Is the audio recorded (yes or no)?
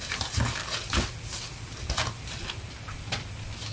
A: yes